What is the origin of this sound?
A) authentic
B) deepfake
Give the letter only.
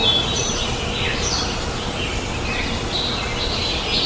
A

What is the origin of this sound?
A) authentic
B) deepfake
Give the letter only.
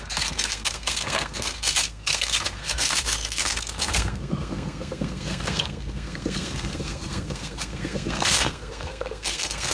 B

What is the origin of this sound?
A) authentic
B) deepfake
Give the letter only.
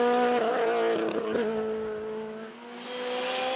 A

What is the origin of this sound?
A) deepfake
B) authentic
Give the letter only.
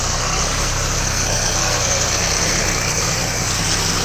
A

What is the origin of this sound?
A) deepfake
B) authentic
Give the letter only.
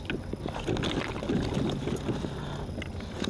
B